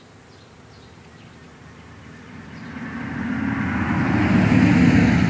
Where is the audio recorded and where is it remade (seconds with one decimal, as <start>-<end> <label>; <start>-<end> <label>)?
0.0-5.3 recorded